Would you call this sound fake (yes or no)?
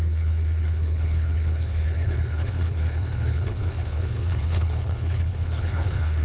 yes